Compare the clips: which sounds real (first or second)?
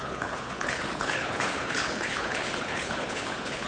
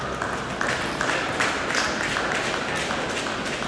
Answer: second